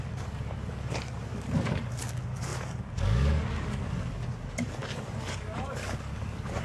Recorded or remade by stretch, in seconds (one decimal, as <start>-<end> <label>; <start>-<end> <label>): 0.0-6.6 remade